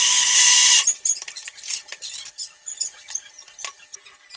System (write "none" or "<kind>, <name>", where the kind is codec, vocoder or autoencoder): none